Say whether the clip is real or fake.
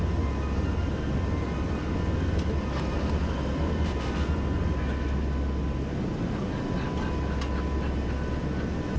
real